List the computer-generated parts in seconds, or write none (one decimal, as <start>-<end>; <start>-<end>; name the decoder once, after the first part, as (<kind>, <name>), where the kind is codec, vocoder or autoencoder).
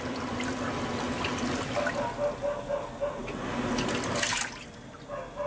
none